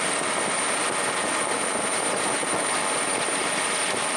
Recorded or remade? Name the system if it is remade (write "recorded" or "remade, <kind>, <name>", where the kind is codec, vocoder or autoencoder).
recorded